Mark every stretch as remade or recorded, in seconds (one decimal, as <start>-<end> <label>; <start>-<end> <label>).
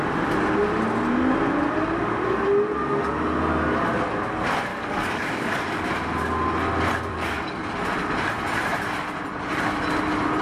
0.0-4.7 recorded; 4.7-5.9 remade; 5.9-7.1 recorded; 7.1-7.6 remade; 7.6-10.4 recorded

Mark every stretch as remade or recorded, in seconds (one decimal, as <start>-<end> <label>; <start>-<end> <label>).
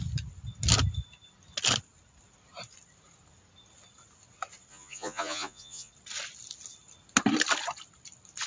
0.0-4.7 recorded; 4.7-5.9 remade; 5.9-8.5 recorded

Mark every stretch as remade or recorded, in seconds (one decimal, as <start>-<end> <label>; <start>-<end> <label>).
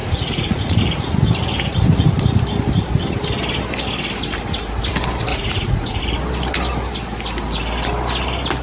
0.0-0.8 remade; 0.8-5.3 recorded; 5.3-6.0 remade; 6.0-8.6 recorded